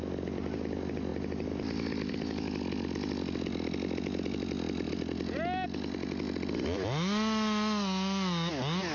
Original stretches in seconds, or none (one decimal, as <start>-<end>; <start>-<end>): 0.0-8.9